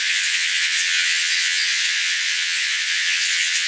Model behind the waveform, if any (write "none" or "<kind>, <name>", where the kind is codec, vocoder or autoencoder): vocoder, Vocos